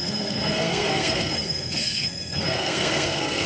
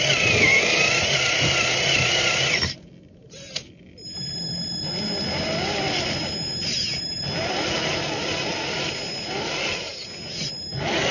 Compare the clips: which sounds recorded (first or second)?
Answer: second